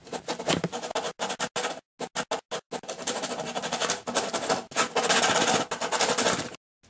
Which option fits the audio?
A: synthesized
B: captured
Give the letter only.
B